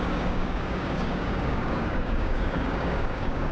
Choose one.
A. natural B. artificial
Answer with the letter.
B